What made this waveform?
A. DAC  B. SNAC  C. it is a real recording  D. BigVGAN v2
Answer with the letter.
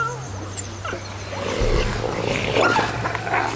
C